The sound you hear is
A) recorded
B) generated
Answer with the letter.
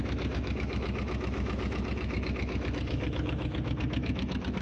B